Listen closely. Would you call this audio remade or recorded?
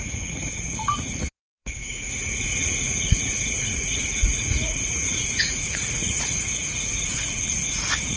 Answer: remade